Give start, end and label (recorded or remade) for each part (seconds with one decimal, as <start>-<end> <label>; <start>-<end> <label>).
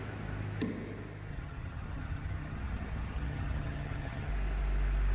0.0-1.3 recorded; 1.3-4.3 remade; 4.3-5.1 recorded